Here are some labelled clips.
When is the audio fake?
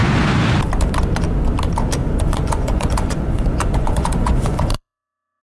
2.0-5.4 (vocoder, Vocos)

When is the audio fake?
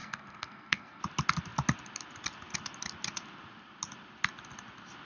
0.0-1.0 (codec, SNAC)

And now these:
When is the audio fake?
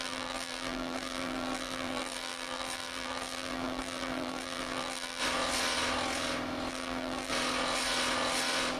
0.0-5.2 (vocoder, BigVGAN v2); 6.7-7.3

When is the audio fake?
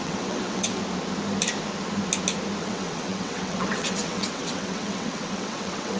0.0-0.8 (vocoder, WaveNeXt); 2.6-6.0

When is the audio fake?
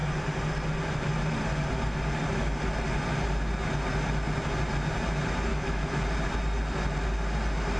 5.5-6.0 (autoencoder, DAC-VAE)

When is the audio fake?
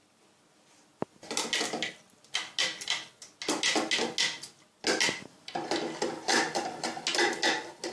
none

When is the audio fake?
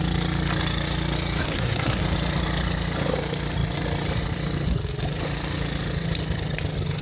1.4-2.0 (codec, SNAC)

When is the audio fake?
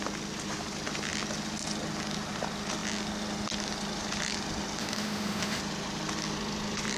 4.8-5.6 (autoencoder, DAC-VAE)